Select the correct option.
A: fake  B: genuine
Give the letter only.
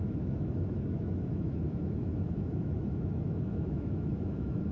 A